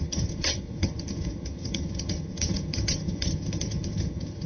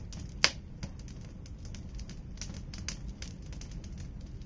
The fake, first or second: first